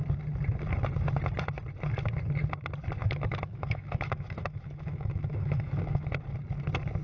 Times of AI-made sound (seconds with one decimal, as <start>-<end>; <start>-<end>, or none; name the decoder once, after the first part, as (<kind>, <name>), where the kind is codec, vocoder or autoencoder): 3.0-6.1 (autoencoder, DAC-VAE)